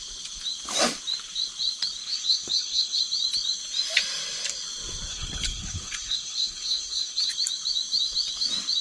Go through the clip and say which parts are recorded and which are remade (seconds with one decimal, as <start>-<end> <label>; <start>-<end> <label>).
0.0-2.0 recorded; 2.0-3.0 remade; 3.0-5.1 recorded; 5.1-7.3 remade; 7.3-8.8 recorded